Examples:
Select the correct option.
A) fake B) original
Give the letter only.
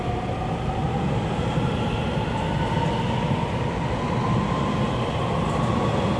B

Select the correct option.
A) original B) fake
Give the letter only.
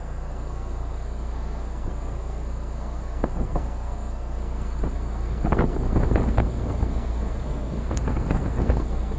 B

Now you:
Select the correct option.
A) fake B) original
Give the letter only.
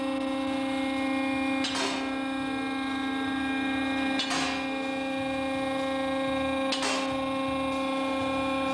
B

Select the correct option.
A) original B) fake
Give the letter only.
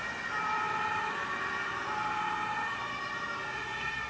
A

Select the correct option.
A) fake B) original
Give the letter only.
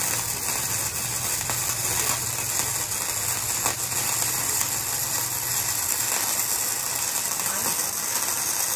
B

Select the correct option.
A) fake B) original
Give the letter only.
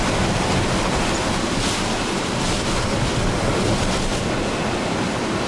B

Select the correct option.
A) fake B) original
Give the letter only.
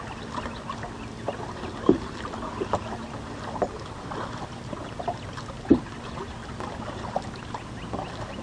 B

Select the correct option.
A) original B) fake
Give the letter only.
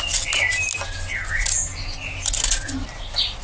A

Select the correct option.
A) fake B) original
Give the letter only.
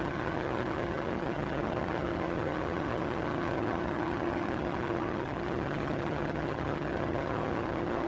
A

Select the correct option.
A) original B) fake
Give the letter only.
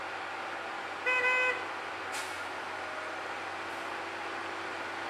A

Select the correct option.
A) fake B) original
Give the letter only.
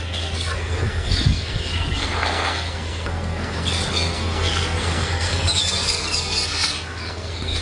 A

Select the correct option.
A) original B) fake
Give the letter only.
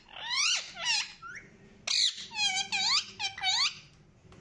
A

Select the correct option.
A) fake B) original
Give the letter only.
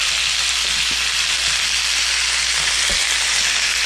B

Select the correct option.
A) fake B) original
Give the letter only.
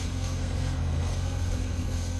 A